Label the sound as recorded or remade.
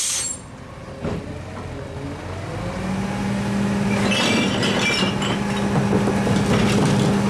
recorded